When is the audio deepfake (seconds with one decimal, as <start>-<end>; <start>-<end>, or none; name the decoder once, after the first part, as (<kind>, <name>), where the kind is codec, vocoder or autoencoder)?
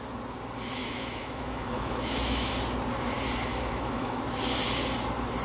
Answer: 0.8-2.5 (autoencoder, DAC-VAE); 3.5-4.2